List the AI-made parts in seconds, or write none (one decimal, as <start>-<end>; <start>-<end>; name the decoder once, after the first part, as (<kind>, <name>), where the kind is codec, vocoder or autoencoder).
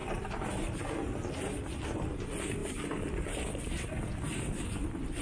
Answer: 0.0-0.8 (vocoder, BigVGAN v2); 2.6-4.7